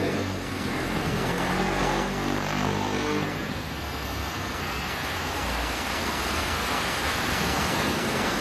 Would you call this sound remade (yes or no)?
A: yes